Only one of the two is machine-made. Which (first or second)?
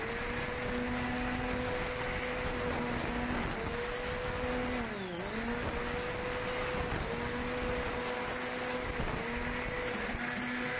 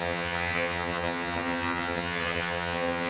second